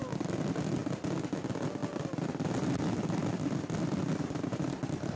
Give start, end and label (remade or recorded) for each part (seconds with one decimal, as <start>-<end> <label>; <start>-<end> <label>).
0.0-0.8 remade; 0.8-1.4 recorded; 1.4-1.8 remade; 1.8-2.7 recorded; 2.7-5.2 remade